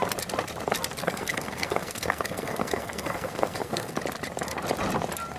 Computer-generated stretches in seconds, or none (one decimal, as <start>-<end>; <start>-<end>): 1.0-4.0